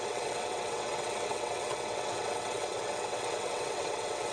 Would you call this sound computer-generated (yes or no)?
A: yes